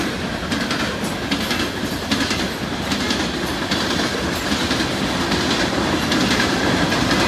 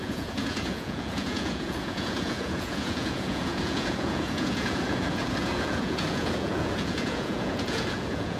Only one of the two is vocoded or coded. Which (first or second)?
second